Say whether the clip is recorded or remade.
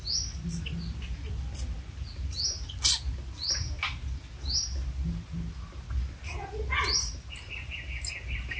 recorded